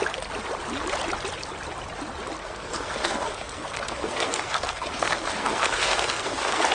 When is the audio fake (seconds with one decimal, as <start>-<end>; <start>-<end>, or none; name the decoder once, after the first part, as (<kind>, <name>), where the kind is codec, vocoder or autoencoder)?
2.4-6.7 (codec, SNAC)